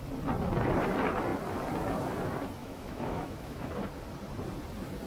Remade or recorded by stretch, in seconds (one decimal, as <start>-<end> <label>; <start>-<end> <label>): 0.0-2.6 recorded; 2.6-3.7 remade; 3.7-5.1 recorded